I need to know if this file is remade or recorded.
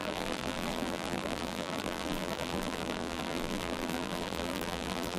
remade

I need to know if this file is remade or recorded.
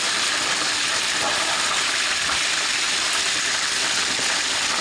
recorded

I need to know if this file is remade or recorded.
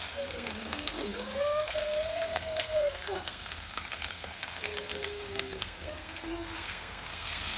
remade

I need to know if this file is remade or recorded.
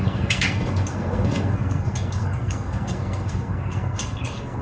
remade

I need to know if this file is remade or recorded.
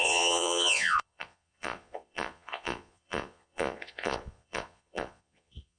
remade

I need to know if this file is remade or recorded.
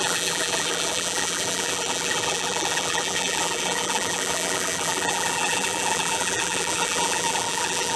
remade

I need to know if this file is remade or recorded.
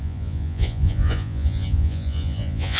remade